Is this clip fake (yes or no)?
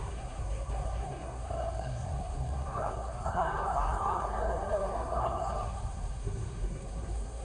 yes